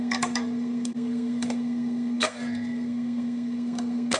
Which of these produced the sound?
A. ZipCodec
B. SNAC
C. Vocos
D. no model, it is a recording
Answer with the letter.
B